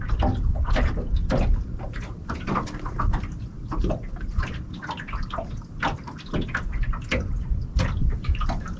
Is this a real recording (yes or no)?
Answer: yes